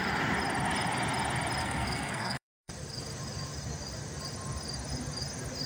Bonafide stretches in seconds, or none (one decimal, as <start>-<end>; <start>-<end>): 0.0-1.6; 2.7-5.7